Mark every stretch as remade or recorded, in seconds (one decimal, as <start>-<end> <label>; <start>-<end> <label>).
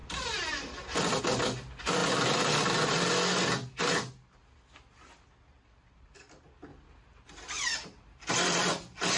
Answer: 0.0-9.2 recorded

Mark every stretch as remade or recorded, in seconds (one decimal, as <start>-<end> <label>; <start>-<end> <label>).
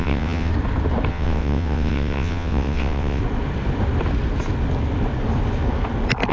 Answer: 0.0-0.5 remade; 0.5-1.1 recorded; 1.1-3.2 remade; 3.2-6.3 recorded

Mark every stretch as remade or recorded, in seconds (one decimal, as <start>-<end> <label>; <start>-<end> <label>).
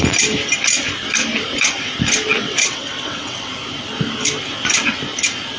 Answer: 0.0-2.3 recorded; 2.3-3.5 remade; 3.5-5.6 recorded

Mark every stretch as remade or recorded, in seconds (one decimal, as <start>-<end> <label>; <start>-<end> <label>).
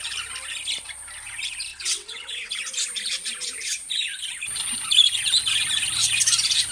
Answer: 0.0-1.7 recorded; 1.7-2.5 remade; 2.5-6.7 recorded